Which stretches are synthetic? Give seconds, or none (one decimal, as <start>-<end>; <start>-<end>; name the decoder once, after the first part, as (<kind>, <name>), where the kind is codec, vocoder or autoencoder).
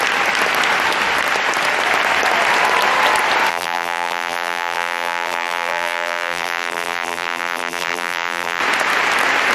3.5-8.6 (vocoder, BigVGAN v2)